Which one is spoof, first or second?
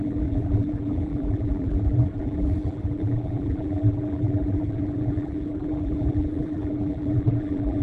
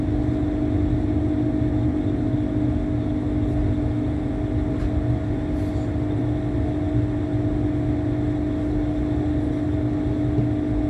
first